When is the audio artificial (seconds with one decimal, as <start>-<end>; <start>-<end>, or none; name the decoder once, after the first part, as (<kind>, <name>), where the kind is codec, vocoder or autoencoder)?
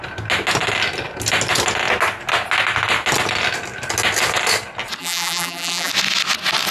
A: 5.0-5.9 (vocoder, BigVGAN v2)